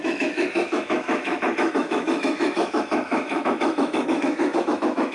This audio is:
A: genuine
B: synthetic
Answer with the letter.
B